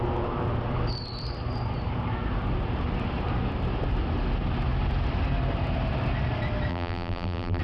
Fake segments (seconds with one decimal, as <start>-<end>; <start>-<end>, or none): 6.7-7.6